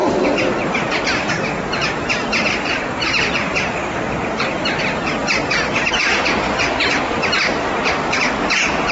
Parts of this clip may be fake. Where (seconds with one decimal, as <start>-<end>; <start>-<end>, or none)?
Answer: 0.0-4.8